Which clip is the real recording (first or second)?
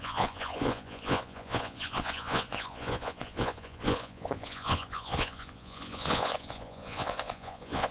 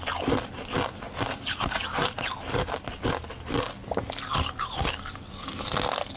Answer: second